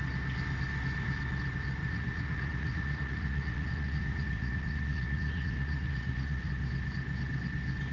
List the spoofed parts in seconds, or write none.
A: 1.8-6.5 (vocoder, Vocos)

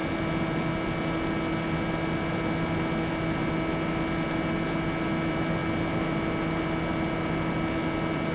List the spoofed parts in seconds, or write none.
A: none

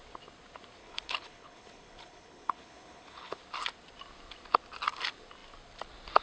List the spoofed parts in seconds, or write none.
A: 0.8-3.4 (codec, HILCodec)

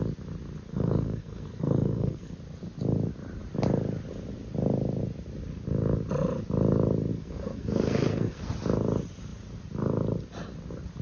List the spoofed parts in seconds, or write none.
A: 0.7-2.3 (codec, SNAC); 7.1-8.5

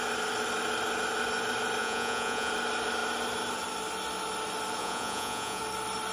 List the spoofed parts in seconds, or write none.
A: 1.8-2.5 (vocoder, Vocos); 4.8-5.6

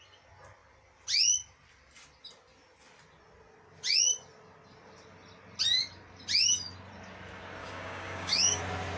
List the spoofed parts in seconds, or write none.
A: 7.6-8.6 (codec, DAC)

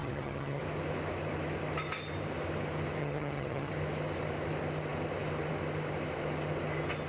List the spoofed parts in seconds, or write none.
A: 0.0-0.6 (vocoder, HiFi-GAN); 3.0-3.7

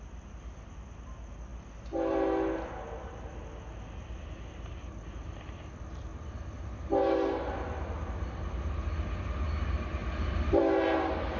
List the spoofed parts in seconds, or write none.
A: 10.0-10.6 (vocoder, BigVGAN v2)